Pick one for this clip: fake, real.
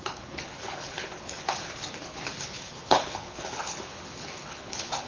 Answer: fake